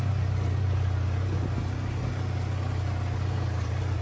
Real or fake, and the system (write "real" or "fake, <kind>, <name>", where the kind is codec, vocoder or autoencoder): real